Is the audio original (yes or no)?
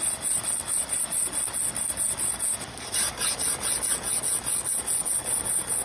yes